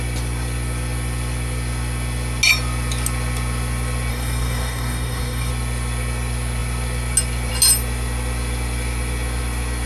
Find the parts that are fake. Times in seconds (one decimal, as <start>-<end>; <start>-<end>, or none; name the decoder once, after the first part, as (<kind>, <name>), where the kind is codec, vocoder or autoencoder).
4.1-5.5 (codec, DAC)